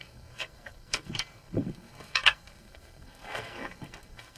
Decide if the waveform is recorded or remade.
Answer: remade